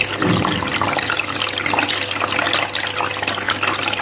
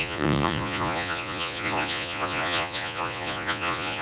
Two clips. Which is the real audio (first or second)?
first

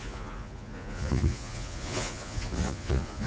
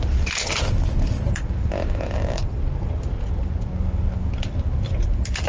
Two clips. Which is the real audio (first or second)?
second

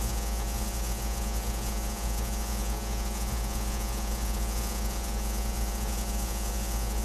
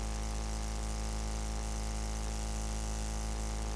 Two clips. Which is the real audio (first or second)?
second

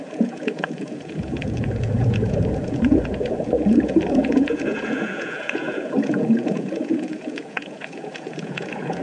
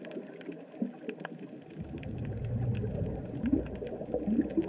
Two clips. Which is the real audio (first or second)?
second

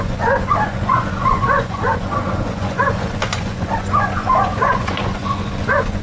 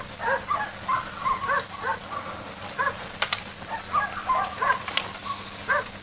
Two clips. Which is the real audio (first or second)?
second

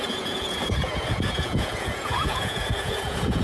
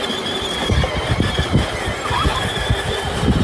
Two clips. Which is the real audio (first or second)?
second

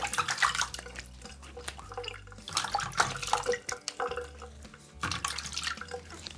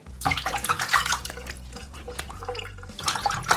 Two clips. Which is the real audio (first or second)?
first